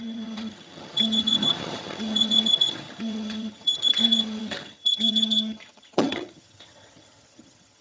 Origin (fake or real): fake